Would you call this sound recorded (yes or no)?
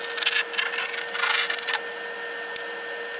yes